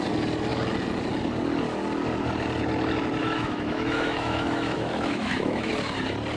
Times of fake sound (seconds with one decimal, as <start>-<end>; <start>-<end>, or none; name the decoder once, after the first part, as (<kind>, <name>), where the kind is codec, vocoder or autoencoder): 3.2-5.7 (autoencoder, DAC-VAE)